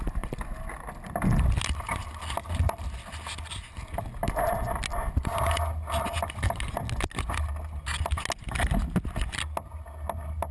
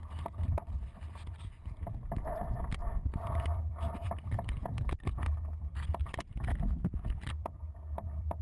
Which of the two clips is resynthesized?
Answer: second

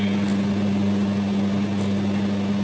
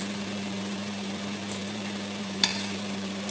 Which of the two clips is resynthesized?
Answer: second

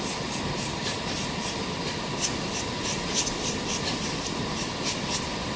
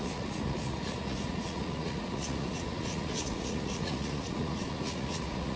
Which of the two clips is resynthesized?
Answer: second